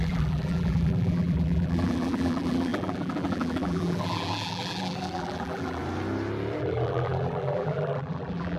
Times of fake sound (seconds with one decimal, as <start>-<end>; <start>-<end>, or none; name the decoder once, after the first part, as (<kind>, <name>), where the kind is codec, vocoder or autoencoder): 0.0-5.8 (vocoder, BigVGAN v2); 6.6-8.6